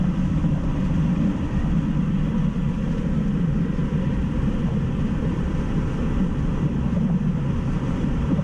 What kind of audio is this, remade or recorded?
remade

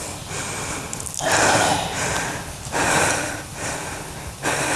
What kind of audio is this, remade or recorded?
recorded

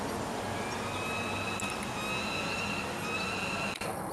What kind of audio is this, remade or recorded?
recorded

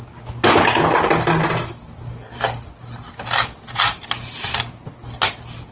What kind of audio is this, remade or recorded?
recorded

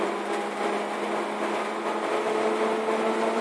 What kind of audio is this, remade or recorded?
recorded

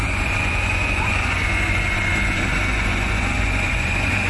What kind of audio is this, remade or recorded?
remade